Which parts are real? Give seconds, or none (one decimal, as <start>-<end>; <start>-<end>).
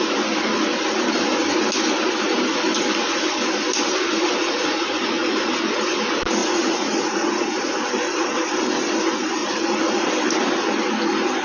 0.0-4.4; 5.5-6.4; 7.9-9.4; 10.1-11.4